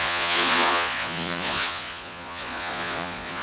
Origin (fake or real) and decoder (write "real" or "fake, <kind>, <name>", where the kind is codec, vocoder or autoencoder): fake, vocoder, Vocos